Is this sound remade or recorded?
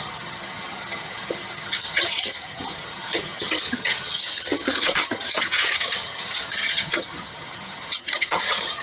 remade